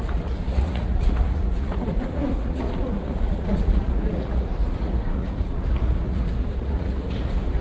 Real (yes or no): no